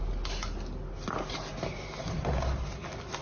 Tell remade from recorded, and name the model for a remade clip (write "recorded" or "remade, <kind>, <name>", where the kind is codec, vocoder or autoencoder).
recorded